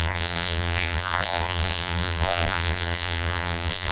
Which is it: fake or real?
fake